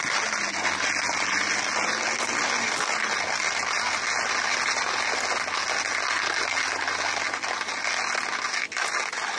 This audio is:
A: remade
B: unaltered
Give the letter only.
B